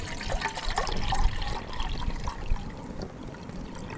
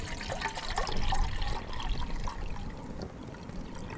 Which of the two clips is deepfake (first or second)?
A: first